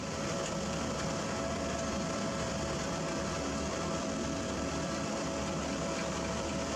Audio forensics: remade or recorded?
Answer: remade